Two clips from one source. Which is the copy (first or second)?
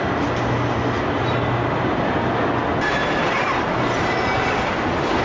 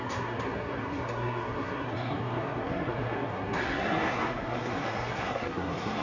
second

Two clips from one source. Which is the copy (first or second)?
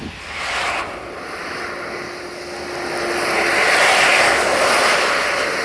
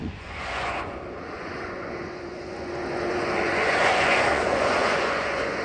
second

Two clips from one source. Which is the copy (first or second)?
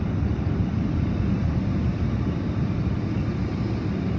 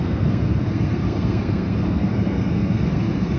second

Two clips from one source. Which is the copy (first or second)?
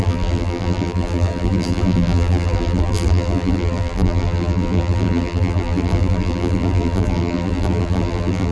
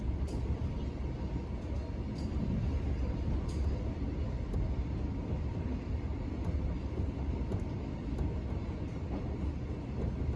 first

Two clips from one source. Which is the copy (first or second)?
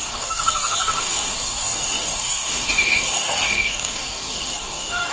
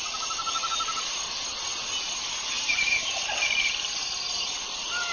first